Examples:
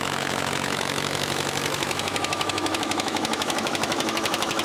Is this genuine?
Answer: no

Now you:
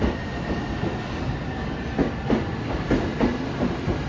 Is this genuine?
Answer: yes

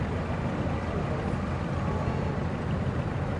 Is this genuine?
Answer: yes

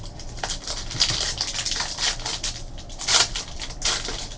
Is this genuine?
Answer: yes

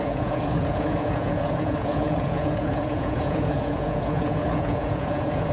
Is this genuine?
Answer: no